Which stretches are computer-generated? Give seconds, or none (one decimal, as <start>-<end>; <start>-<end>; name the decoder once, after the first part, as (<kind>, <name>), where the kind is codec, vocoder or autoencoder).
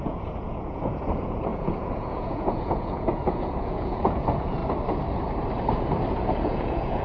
0.0-4.6 (vocoder, Vocos); 6.4-7.0